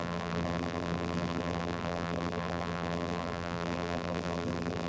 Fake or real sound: fake